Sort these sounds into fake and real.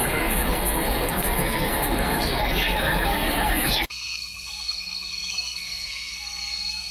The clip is fake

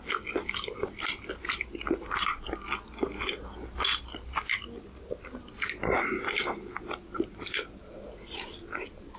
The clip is real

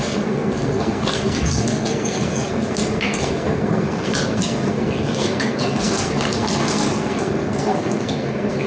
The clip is fake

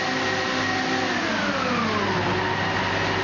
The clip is real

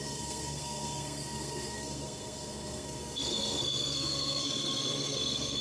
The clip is fake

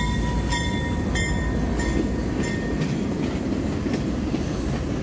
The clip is real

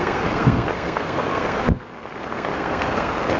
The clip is fake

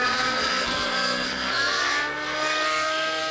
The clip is fake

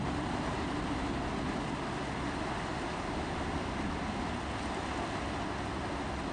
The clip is real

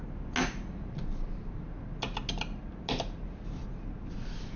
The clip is real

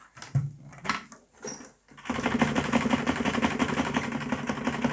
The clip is real